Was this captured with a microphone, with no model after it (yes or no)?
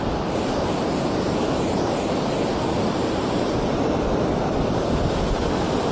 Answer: yes